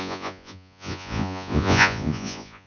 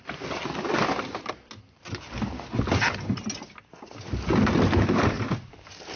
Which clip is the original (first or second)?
second